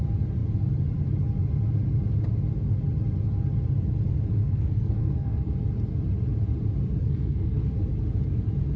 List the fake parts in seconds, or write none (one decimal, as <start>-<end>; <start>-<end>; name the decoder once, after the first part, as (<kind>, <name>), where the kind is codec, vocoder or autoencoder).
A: 4.4-5.5 (codec, SNAC); 7.0-7.7